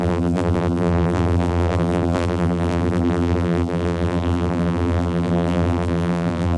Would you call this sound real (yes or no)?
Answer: no